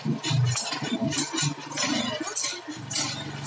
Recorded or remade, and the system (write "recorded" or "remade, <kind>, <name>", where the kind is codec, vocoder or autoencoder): recorded